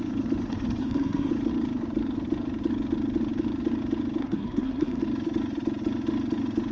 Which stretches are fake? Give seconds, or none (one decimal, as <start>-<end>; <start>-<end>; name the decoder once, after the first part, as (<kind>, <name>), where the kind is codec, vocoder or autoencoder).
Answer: 0.8-1.3 (codec, SNAC); 4.2-5.0